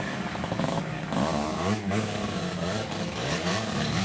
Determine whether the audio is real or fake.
fake